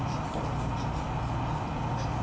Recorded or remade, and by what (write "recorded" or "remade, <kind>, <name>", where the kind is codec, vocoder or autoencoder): recorded